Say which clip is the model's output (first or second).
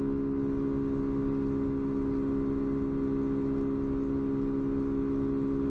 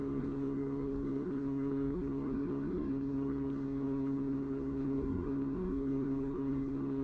second